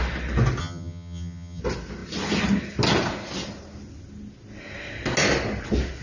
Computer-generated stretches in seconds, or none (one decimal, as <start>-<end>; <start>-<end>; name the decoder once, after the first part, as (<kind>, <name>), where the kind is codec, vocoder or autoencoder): 0.6-1.6 (vocoder, HiFi-GAN)